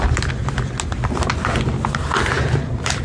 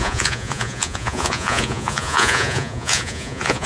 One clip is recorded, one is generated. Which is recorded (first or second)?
first